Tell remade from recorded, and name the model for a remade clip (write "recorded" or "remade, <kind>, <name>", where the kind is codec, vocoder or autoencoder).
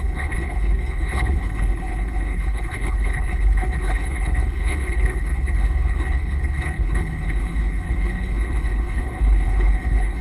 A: remade, codec, HILCodec